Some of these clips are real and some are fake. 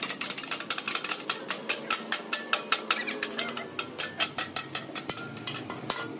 real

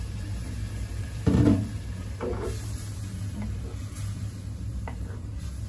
fake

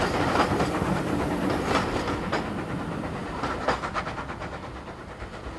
real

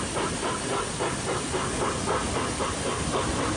real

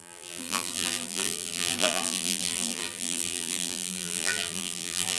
fake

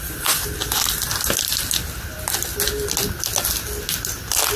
real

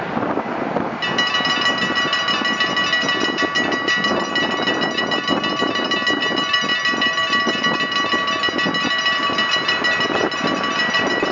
real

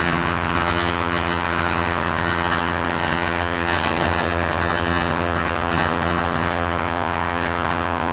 fake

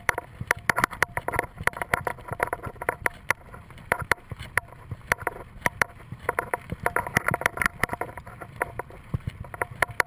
fake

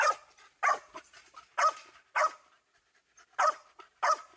real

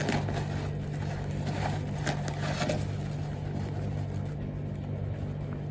real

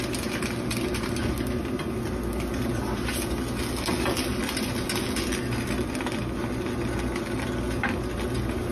real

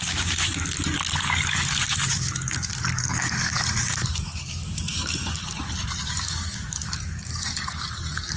fake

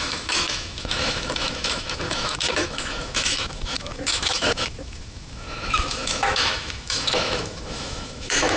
fake